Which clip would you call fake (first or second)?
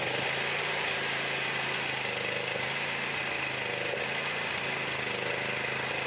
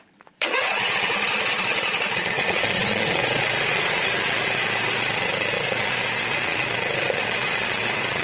second